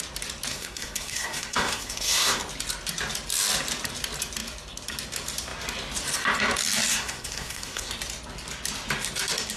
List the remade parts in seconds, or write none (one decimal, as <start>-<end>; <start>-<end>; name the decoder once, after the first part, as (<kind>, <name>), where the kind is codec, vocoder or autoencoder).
0.5-2.4 (codec, SNAC); 6.9-7.9